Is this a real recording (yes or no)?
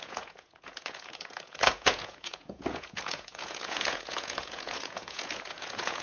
no